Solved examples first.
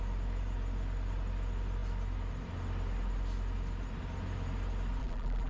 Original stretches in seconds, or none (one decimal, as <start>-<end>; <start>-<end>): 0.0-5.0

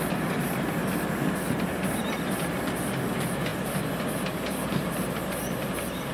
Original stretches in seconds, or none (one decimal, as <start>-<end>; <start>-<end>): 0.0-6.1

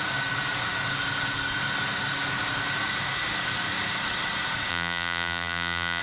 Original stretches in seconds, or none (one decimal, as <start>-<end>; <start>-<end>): 0.0-4.7

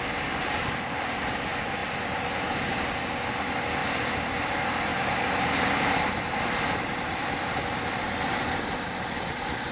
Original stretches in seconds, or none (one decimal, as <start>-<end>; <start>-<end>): 0.0-3.8; 4.5-4.9; 7.2-9.7